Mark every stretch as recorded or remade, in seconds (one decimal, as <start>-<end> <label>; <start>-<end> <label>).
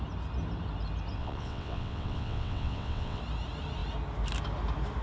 0.0-1.2 recorded; 1.2-3.2 remade; 3.2-5.0 recorded